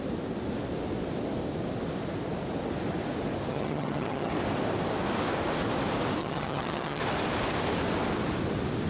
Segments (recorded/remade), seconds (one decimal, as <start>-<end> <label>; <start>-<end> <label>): 0.0-3.5 recorded; 3.5-4.3 remade; 4.3-6.2 recorded; 6.2-7.0 remade; 7.0-8.9 recorded